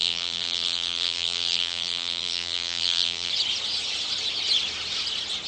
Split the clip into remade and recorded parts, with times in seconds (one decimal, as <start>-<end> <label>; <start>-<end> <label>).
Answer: 0.0-3.3 remade; 3.3-5.5 recorded